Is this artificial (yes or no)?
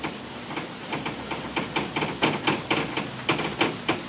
no